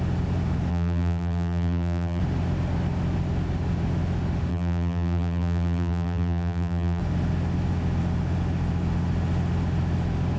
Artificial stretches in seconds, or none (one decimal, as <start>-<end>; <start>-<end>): 0.7-2.2; 4.5-7.0